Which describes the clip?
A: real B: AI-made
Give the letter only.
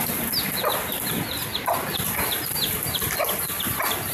A